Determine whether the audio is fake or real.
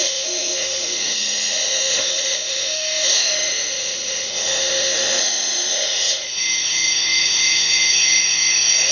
fake